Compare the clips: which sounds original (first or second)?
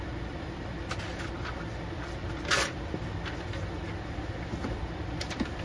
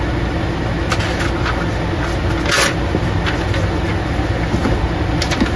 second